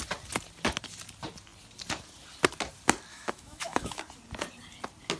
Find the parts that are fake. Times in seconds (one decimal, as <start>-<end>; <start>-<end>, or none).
3.1-4.0